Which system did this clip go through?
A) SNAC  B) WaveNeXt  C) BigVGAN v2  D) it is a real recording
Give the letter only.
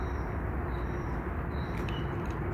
D